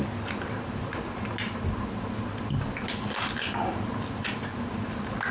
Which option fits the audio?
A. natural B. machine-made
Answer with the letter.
A